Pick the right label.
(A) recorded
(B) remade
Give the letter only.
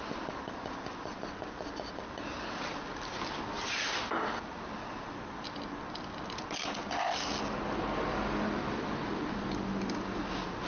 A